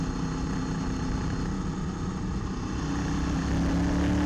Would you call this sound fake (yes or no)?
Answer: no